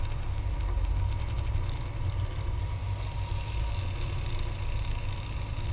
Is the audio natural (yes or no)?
yes